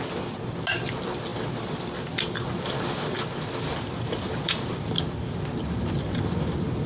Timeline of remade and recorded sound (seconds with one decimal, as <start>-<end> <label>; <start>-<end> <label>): 0.0-6.9 recorded